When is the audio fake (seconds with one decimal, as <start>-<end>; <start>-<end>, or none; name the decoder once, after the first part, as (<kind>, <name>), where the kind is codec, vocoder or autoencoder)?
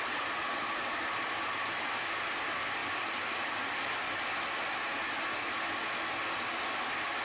2.8-4.0 (vocoder, BigVGAN v2)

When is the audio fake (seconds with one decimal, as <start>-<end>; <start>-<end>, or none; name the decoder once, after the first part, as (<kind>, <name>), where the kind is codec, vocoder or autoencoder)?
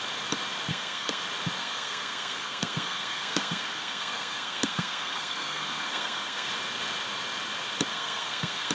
0.7-1.2 (codec, SNAC); 1.6-6.5; 7.9-8.7